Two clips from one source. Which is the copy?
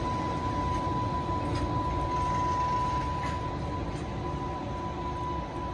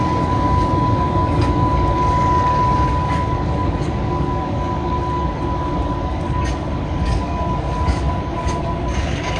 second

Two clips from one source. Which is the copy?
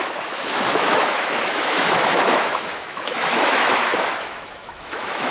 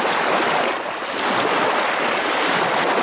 first